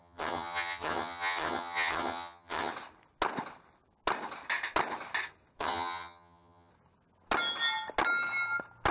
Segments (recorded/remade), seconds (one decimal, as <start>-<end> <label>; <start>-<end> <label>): 0.0-2.7 remade; 2.7-5.6 recorded; 5.6-6.7 remade; 6.7-8.9 recorded